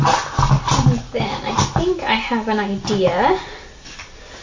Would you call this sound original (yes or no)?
yes